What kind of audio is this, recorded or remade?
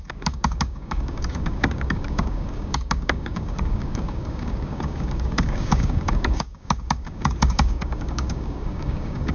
remade